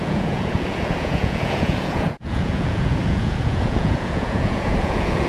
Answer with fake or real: fake